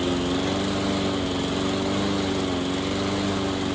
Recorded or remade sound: recorded